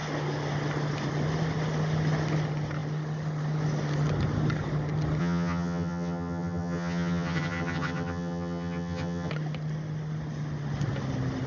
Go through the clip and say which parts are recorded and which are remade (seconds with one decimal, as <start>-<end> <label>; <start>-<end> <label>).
0.0-5.2 recorded; 5.2-9.3 remade; 9.3-11.5 recorded